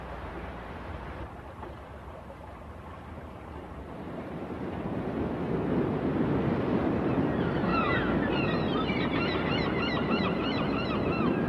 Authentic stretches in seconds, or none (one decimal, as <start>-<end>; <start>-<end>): 7.7-8.3